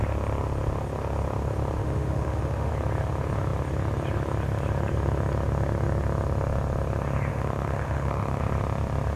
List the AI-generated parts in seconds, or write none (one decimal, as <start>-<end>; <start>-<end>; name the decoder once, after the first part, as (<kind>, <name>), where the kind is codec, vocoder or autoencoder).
1.8-2.7 (autoencoder, DAC-VAE); 7.3-8.4